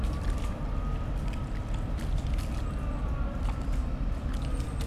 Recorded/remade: recorded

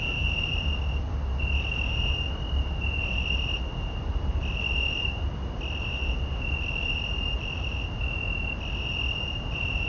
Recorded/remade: recorded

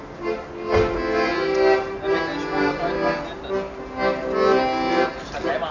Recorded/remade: recorded